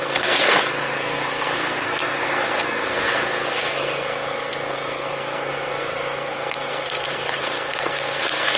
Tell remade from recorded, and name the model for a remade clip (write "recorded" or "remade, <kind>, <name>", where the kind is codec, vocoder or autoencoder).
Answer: remade, codec, SNAC